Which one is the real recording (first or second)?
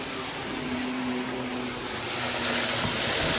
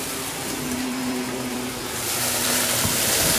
first